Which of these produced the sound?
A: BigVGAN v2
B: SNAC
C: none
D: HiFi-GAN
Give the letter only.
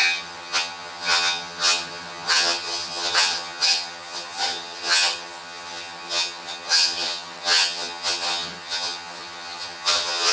D